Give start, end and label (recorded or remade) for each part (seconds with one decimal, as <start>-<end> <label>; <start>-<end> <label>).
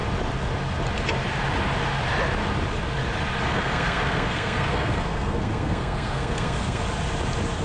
0.0-3.5 recorded; 3.5-6.8 remade; 6.8-7.6 recorded